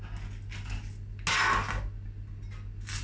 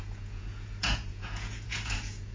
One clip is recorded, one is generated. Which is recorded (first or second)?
first